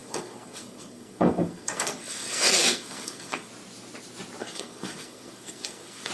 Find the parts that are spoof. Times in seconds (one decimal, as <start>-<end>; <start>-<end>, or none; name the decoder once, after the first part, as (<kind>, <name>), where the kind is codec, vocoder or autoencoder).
0.0-3.5 (codec, SNAC); 4.4-6.1